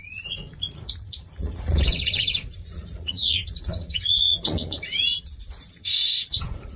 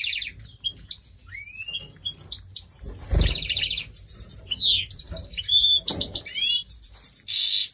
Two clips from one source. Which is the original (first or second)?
second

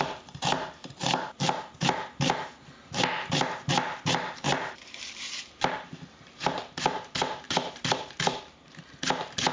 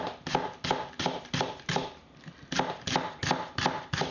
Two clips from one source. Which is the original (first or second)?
second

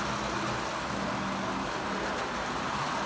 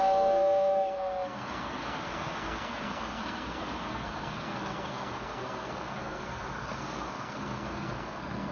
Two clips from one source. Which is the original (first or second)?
first